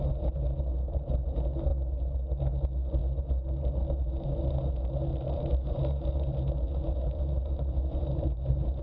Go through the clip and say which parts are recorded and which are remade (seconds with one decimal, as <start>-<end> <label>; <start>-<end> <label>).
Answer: 0.0-5.1 recorded; 5.1-8.8 remade